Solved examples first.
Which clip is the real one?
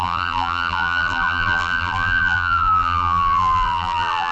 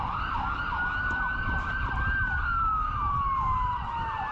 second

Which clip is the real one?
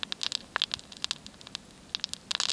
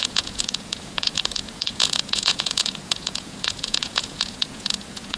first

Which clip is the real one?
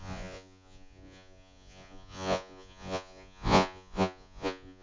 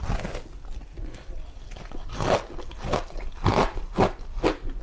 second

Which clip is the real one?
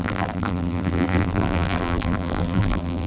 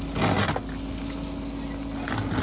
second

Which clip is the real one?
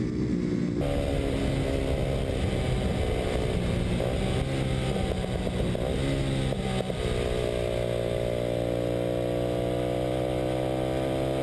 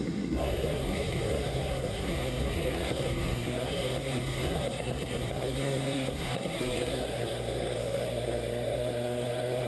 first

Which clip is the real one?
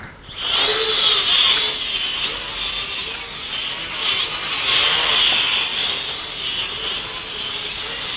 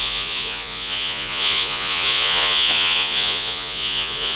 first